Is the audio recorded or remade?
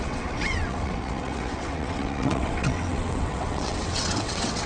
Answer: remade